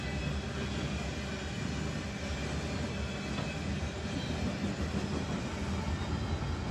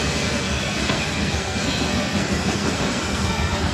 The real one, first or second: first